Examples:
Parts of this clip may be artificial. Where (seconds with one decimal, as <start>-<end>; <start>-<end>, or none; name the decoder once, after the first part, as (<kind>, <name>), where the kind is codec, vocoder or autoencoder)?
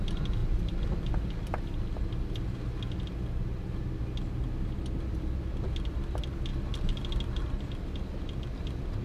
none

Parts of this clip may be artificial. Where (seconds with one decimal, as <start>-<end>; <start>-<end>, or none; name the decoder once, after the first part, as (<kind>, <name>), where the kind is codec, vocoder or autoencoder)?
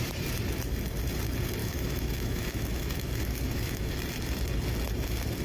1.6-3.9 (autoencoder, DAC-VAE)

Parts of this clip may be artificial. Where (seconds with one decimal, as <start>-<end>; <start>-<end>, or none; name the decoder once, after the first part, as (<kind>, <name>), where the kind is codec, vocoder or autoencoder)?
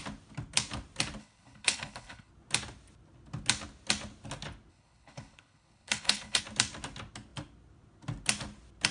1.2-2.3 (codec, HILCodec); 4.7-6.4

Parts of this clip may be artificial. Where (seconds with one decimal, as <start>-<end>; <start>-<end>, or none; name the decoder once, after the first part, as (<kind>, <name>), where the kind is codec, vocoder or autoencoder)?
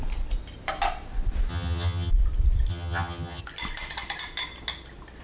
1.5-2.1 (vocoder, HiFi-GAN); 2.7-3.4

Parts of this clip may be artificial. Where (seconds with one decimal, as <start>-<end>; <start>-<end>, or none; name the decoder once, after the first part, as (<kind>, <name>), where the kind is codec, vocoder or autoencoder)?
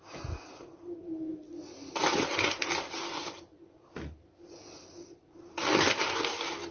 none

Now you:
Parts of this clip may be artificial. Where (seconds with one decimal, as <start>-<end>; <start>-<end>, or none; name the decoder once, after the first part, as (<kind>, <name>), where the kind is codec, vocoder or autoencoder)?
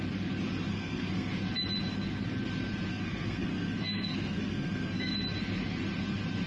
0.7-1.3 (codec, SNAC); 2.9-5.1